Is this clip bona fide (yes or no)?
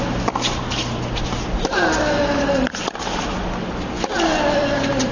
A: yes